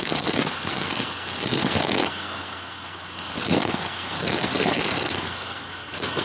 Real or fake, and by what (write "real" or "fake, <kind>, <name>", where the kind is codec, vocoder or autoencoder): fake, codec, SNAC